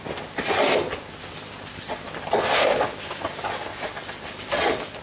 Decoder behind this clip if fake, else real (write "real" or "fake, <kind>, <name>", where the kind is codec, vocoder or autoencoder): real